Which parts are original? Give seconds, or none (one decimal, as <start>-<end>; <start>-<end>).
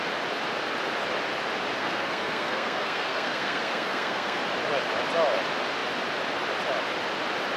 0.0-1.8; 4.4-7.6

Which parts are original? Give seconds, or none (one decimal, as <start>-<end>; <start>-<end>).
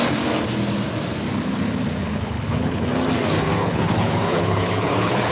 0.0-2.0; 2.9-3.6